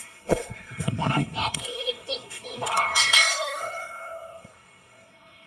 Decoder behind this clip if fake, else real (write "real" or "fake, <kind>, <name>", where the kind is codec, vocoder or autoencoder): fake, codec, SNAC